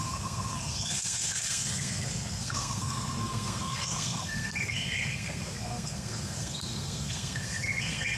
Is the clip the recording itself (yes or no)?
no